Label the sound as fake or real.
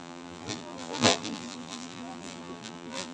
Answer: fake